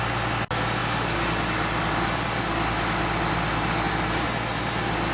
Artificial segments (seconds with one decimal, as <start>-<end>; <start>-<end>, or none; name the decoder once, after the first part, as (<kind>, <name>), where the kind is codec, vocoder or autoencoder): none